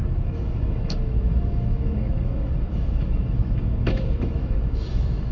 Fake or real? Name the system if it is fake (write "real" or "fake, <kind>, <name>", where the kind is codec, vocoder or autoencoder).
fake, autoencoder, DAC-VAE